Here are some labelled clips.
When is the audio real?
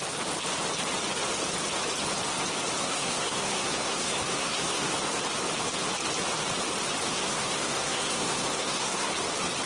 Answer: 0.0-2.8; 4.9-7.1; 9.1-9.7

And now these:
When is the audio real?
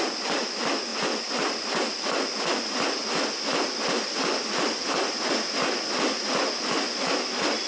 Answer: 0.0-7.7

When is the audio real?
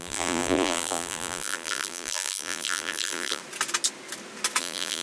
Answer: 3.4-4.6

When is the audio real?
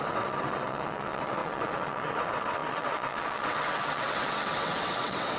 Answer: none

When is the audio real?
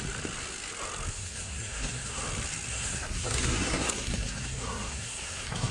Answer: 0.0-1.1; 2.2-2.7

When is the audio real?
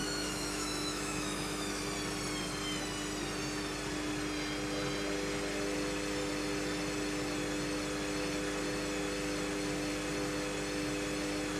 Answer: 1.8-11.6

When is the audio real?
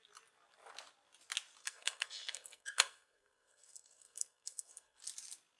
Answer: 0.0-1.6; 5.0-5.6